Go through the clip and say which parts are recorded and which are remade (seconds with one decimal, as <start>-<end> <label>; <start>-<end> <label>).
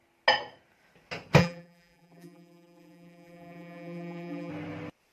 0.0-1.4 recorded; 1.4-4.5 remade; 4.5-5.1 recorded